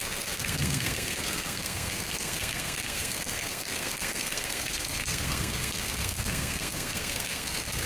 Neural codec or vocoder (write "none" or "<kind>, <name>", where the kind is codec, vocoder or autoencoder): codec, SNAC